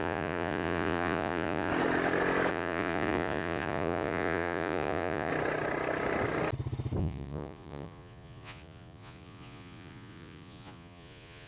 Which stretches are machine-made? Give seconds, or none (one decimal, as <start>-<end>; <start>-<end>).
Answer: 0.0-1.7; 2.5-5.3; 7.0-11.5